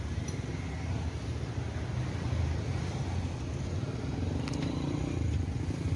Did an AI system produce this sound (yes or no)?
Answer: no